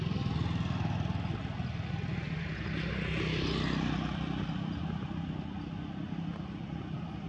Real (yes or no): yes